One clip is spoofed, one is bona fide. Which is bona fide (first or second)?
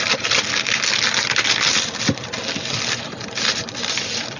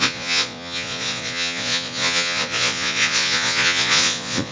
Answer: first